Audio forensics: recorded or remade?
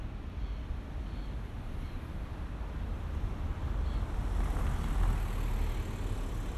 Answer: recorded